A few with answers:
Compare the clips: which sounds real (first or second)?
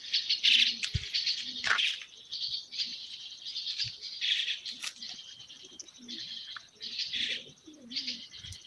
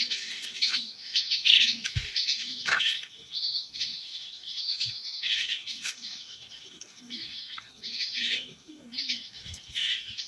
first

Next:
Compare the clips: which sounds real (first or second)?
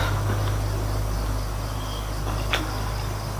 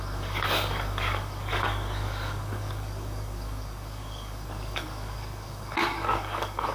first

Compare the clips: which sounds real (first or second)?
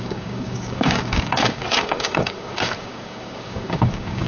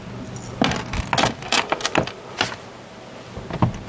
second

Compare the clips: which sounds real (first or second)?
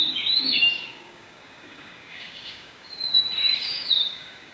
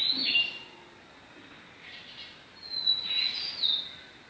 second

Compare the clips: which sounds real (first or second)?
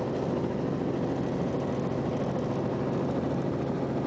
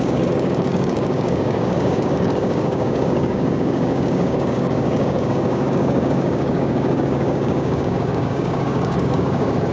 first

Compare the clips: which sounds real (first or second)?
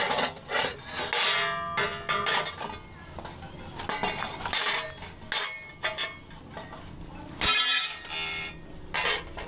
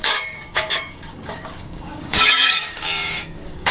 first